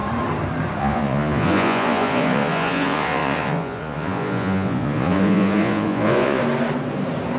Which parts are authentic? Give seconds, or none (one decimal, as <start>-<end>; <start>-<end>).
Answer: 0.0-0.8; 6.4-7.4